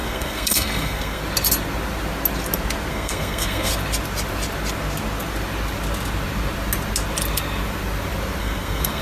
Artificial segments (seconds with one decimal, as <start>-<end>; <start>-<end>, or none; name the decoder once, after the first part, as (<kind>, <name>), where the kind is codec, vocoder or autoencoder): 0.0-1.2 (codec, SNAC); 2.9-3.7; 8.4-9.0